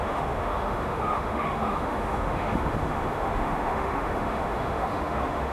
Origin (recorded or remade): remade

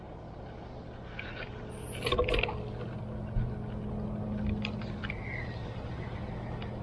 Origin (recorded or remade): recorded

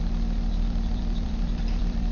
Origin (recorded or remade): remade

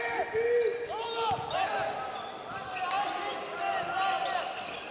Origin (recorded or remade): recorded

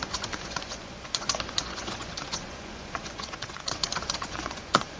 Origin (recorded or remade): remade